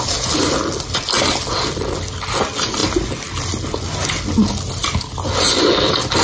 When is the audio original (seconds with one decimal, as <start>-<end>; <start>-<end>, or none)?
0.0-6.2